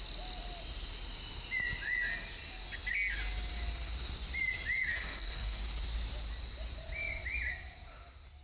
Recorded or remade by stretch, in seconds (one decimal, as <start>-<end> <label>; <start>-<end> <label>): 0.0-4.9 recorded; 4.9-5.6 remade; 5.6-8.4 recorded